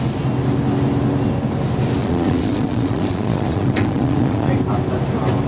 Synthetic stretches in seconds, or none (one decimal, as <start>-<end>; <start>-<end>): 2.0-4.5